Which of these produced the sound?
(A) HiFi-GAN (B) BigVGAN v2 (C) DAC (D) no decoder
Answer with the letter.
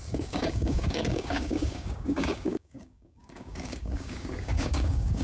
C